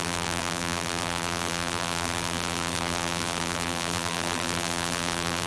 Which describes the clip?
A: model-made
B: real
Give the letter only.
A